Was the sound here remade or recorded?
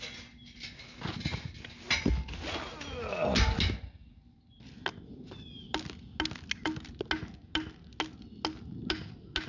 recorded